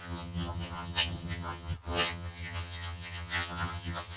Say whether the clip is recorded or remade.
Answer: remade